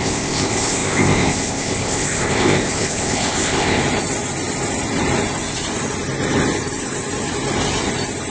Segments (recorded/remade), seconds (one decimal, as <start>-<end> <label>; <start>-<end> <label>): 0.0-3.8 remade; 3.8-8.3 recorded